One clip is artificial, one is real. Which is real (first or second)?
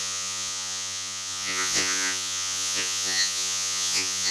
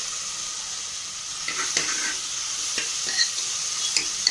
second